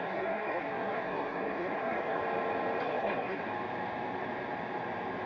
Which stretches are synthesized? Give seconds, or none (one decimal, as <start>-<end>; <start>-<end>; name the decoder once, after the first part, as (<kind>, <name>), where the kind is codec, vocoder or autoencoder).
0.0-2.2 (codec, SNAC); 2.8-3.4

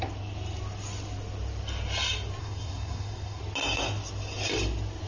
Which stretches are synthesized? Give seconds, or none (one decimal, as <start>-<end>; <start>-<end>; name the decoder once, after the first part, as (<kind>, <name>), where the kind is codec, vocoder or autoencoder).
2.4-3.4 (codec, SNAC)

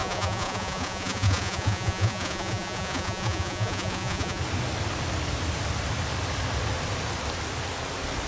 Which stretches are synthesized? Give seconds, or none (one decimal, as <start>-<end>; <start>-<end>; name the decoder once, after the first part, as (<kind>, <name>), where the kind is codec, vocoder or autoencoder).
0.0-4.4 (vocoder, Vocos)

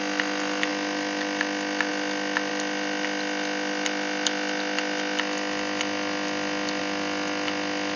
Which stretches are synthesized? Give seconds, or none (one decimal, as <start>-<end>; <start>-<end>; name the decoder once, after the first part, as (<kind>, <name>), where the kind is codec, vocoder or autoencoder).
none

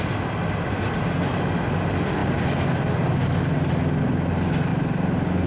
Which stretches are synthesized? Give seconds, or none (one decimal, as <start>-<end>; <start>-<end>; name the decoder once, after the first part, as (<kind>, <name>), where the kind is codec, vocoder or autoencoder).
none

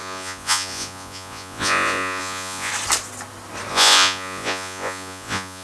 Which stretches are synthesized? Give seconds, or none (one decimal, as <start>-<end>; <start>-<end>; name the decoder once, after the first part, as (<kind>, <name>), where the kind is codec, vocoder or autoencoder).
0.0-2.7 (vocoder, Vocos); 3.7-5.6